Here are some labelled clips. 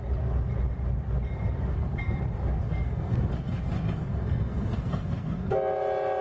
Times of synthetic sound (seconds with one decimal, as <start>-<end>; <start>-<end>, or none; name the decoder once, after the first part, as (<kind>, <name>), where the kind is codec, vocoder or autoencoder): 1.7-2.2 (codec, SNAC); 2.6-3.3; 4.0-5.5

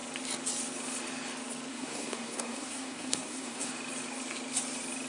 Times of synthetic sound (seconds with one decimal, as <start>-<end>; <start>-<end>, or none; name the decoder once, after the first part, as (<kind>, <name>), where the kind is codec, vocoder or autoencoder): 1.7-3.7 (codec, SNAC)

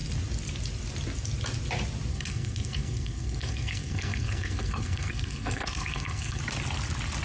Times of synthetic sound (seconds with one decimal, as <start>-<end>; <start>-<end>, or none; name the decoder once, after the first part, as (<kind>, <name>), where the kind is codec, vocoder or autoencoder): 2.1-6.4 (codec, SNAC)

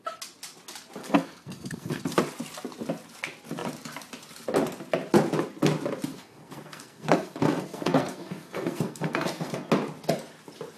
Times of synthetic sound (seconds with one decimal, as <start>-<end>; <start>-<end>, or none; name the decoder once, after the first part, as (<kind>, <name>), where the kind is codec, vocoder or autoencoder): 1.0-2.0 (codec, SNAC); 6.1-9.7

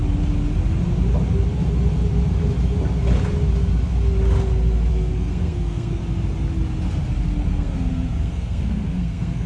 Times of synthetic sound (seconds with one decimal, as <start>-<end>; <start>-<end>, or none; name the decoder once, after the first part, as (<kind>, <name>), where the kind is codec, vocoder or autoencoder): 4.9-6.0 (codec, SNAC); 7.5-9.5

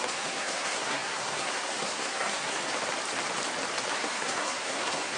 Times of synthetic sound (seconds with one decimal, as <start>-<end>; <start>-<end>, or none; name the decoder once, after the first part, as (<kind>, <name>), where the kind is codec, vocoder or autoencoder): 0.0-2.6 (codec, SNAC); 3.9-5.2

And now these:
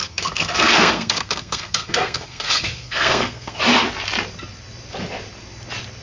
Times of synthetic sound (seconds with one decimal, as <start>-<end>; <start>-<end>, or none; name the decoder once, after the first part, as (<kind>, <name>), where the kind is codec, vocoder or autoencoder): 0.0-3.6 (codec, SNAC)